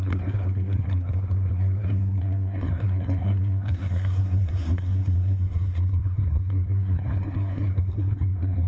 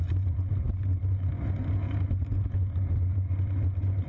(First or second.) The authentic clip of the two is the second